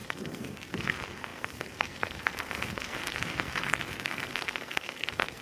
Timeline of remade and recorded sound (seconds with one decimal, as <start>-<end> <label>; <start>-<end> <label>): 0.0-5.4 remade